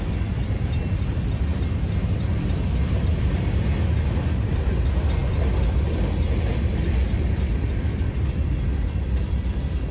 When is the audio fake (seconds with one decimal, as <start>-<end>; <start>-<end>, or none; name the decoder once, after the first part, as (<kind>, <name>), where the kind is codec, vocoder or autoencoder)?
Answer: 1.5-3.6 (vocoder, BigVGAN v2); 5.2-9.9